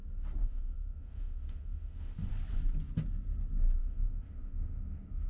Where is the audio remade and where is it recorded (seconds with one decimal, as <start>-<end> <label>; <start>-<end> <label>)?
0.0-0.4 recorded; 0.4-2.3 remade; 2.3-3.8 recorded; 3.8-5.3 remade

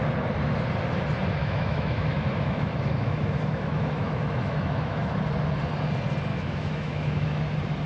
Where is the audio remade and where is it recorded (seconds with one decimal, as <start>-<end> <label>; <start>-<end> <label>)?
0.0-1.4 recorded; 1.4-5.2 remade; 5.2-6.3 recorded; 6.3-7.4 remade; 7.4-7.9 recorded

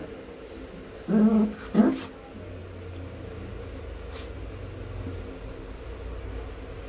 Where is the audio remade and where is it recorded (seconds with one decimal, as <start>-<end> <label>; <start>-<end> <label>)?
0.0-6.9 recorded

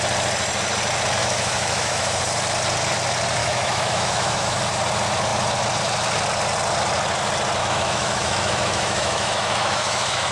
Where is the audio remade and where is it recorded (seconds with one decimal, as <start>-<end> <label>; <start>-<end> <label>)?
0.0-1.2 recorded; 1.2-2.2 remade; 2.2-3.4 recorded; 3.4-4.6 remade; 4.6-7.6 recorded; 7.6-10.3 remade